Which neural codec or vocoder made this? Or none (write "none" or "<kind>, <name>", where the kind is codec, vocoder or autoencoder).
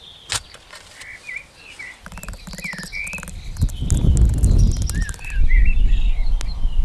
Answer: none